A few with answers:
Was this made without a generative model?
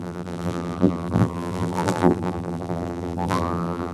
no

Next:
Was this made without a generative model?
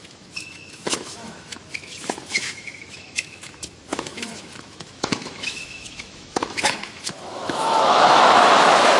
no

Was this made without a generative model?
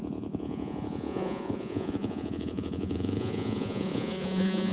no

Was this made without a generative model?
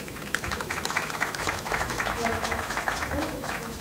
no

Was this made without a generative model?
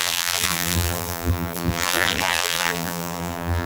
no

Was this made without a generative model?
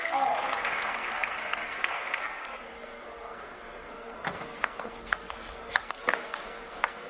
no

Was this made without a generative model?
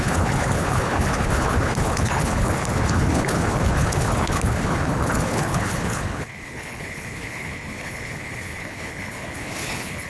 no